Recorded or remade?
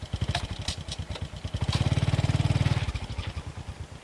recorded